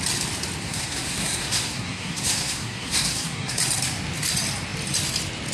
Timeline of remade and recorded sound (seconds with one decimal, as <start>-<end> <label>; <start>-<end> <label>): 0.0-0.6 recorded; 0.6-3.6 remade; 3.6-5.5 recorded